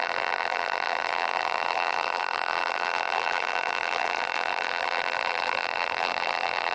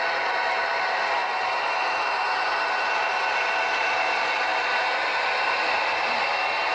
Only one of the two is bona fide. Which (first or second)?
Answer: second